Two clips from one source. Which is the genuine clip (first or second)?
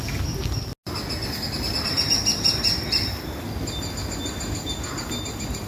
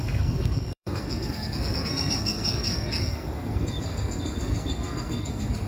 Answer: first